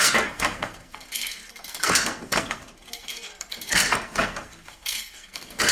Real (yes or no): no